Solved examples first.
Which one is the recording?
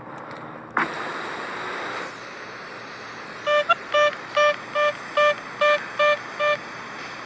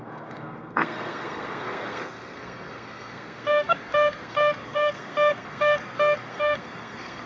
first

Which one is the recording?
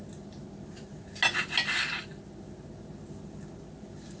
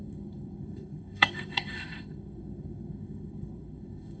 first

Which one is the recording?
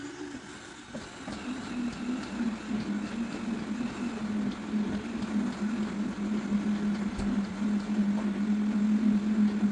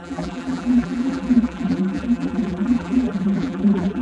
first